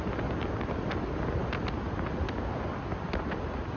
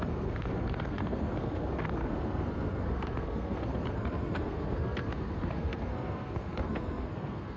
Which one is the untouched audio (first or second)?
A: first